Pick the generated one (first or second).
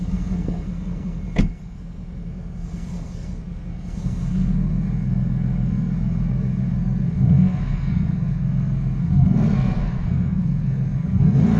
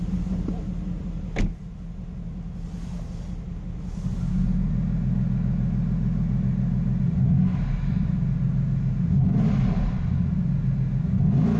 first